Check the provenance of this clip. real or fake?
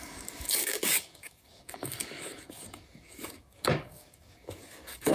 fake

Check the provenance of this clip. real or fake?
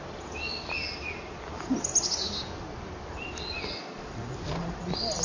real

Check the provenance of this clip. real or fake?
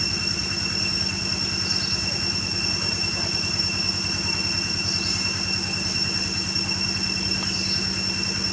real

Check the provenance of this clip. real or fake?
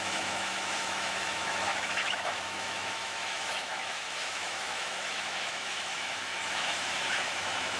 fake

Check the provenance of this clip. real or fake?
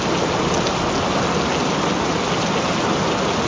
real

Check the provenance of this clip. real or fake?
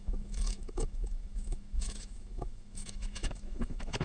fake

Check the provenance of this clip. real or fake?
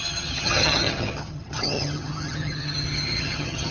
fake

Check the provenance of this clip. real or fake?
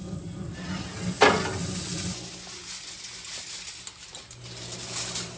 real